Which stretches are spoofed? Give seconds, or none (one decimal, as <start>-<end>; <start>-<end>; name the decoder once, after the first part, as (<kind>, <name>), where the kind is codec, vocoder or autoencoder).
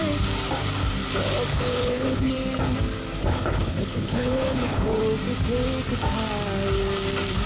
1.5-2.3 (codec, HILCodec); 3.2-5.0